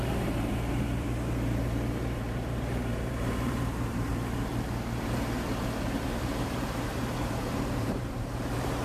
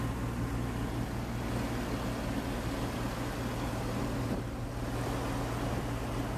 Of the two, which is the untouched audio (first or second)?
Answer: second